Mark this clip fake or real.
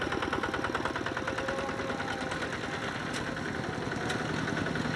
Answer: real